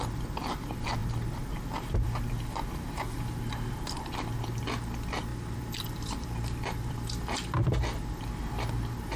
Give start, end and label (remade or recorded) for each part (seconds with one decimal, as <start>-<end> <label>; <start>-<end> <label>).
0.0-5.3 recorded; 5.3-8.2 remade; 8.2-9.2 recorded